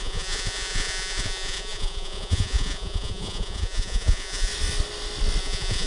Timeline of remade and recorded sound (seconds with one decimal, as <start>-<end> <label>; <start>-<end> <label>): 0.0-4.5 remade; 4.5-5.4 recorded; 5.4-5.9 remade

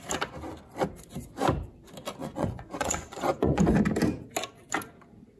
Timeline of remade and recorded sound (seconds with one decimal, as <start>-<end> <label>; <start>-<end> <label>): 0.0-2.2 recorded; 2.2-3.6 remade; 3.6-5.4 recorded

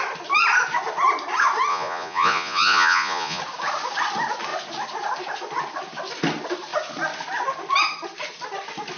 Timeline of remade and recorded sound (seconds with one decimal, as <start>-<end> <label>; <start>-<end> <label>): 0.0-1.7 recorded; 1.7-3.4 remade; 3.4-9.0 recorded

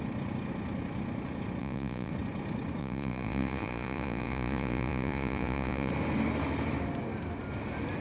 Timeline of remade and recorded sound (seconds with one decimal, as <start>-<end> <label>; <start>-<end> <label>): 0.0-1.6 recorded; 1.6-2.1 remade; 2.1-2.8 recorded; 2.8-5.9 remade; 5.9-8.0 recorded

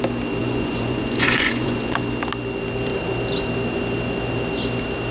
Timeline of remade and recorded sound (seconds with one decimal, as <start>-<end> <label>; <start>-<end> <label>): 0.0-0.4 recorded; 0.4-2.0 remade; 2.0-5.1 recorded

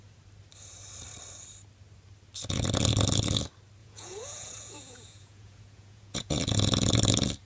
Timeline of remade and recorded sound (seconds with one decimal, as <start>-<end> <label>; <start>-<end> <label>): 0.0-3.8 recorded; 3.8-6.4 remade; 6.4-7.5 recorded

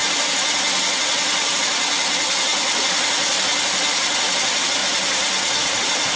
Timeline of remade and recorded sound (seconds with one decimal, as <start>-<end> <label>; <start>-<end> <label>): 0.0-6.2 recorded